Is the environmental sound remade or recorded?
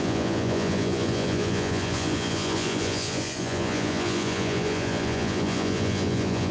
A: remade